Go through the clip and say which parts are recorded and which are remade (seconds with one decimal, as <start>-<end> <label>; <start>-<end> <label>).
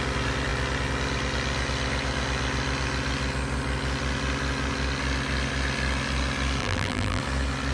0.0-6.6 recorded; 6.6-7.2 remade; 7.2-7.7 recorded